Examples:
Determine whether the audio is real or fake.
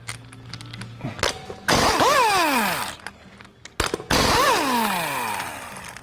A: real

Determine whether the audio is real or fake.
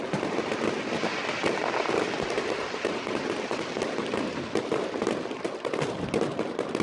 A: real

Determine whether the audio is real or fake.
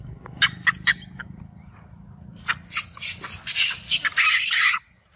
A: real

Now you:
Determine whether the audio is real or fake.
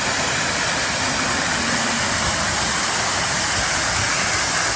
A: real